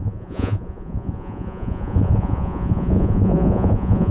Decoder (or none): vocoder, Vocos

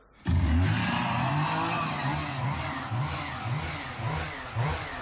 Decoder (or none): none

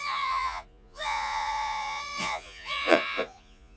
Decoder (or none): vocoder, Vocos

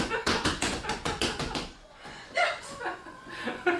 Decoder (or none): vocoder, Vocos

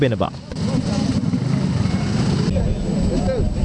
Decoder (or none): none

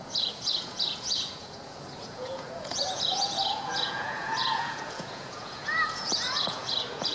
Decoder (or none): vocoder, Vocos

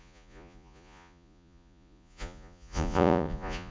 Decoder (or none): vocoder, Vocos